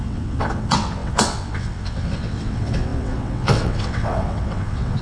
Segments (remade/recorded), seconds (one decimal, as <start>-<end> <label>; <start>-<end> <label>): 0.0-5.0 remade